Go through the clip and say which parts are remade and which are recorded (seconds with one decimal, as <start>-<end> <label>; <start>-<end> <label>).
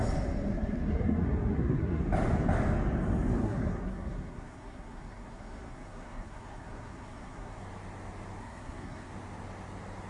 0.0-0.5 recorded; 0.5-2.0 remade; 2.0-3.4 recorded; 3.4-7.6 remade; 7.6-8.4 recorded; 8.4-9.1 remade; 9.1-10.1 recorded